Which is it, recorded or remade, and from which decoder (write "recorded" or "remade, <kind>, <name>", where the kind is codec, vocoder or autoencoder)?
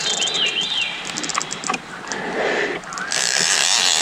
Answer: recorded